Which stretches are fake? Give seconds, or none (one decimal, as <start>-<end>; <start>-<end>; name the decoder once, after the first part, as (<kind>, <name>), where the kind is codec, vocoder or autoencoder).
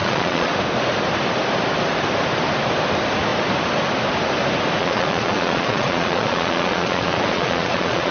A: 0.0-0.5 (vocoder, Vocos); 4.8-8.1